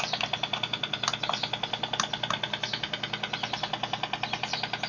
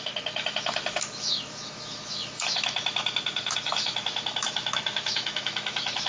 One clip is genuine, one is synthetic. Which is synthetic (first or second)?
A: second